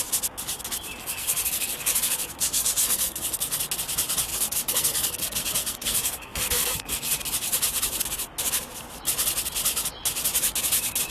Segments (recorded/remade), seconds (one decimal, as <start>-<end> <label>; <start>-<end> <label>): 0.0-1.0 recorded; 1.0-3.6 remade; 3.6-4.3 recorded; 4.3-7.1 remade; 7.1-11.1 recorded